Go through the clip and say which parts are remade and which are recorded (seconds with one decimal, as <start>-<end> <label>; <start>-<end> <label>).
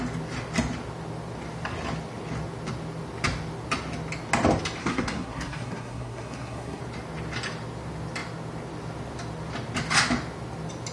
0.0-4.8 recorded; 4.8-6.8 remade; 6.8-10.9 recorded